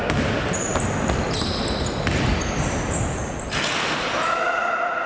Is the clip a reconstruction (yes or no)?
no